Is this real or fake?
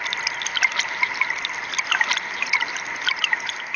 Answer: real